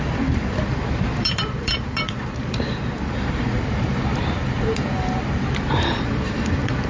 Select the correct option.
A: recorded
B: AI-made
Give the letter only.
B